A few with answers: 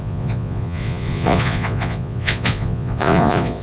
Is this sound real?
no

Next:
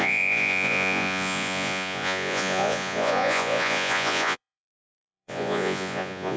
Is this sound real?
no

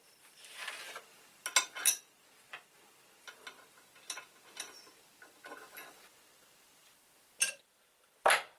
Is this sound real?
yes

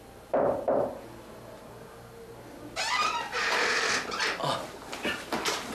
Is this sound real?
yes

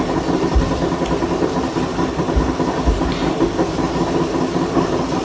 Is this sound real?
yes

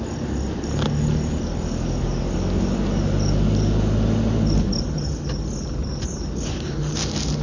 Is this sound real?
yes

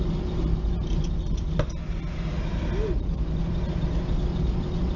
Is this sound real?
yes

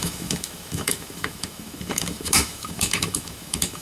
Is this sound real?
no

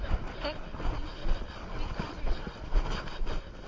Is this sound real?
yes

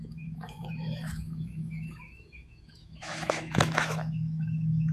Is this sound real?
no